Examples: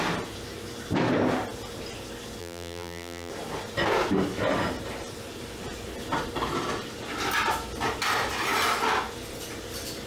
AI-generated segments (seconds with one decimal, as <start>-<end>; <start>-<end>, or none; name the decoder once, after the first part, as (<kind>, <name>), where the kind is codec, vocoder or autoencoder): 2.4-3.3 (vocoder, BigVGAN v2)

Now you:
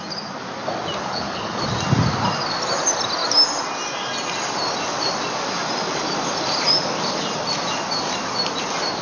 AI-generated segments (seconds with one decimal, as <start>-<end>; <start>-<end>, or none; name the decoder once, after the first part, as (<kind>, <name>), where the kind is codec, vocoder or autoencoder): 1.0-1.6 (codec, HILCodec)

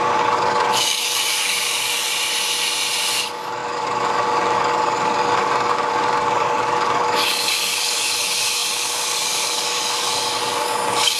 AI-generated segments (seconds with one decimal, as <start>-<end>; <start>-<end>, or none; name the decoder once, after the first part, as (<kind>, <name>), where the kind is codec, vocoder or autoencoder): 0.0-2.1 (codec, DAC); 3.1-11.2

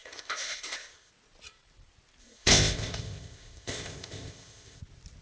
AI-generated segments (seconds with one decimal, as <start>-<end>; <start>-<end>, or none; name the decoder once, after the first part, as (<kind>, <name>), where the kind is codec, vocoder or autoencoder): 0.0-1.1 (codec, ZipCodec); 2.2-4.8

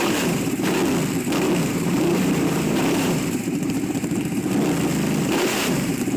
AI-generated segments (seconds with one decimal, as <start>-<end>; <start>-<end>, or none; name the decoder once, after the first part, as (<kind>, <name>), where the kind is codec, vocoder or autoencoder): 0.0-0.8 (vocoder, BigVGAN v2); 1.6-4.4; 5.2-6.2